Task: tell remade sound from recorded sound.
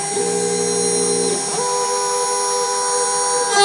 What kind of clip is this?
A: recorded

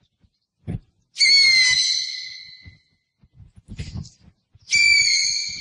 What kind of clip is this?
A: recorded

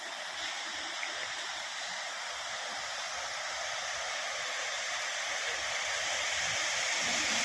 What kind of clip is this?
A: recorded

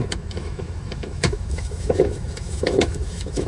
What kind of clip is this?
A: remade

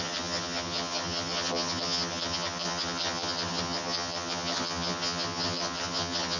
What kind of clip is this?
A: remade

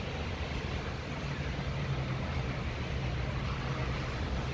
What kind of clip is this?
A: recorded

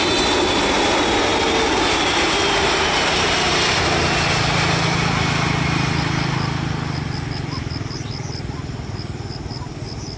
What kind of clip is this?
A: recorded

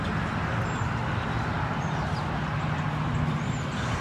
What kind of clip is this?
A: recorded